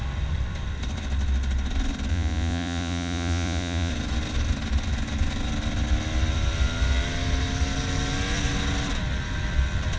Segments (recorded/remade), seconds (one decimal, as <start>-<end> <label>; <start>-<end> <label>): 0.0-2.1 recorded; 2.1-3.9 remade; 3.9-10.0 recorded